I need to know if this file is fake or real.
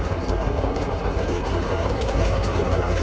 fake